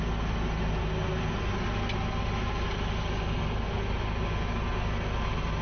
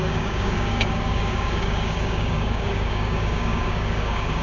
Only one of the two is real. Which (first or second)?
first